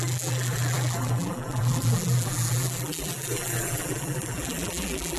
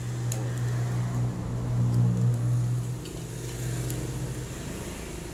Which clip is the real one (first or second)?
second